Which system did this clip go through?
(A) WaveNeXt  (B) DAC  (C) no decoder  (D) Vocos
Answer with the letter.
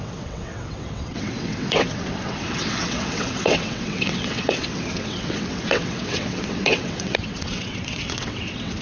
A